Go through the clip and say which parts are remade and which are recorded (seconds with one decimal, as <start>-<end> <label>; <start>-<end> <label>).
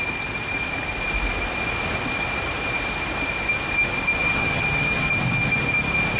0.0-4.2 recorded; 4.2-5.1 remade; 5.1-6.2 recorded